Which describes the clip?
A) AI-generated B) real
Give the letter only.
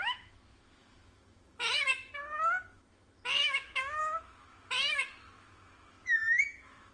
A